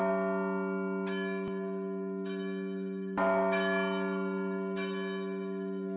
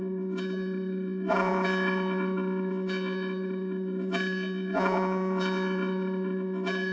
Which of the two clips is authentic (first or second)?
first